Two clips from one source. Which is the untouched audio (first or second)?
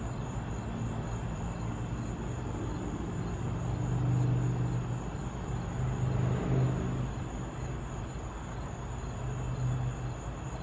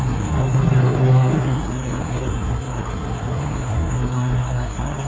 first